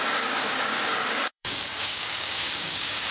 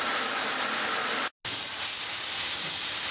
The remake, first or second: first